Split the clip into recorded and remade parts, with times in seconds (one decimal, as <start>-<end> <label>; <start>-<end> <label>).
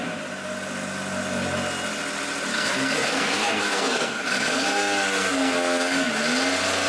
0.0-2.5 recorded; 2.5-6.1 remade; 6.1-6.9 recorded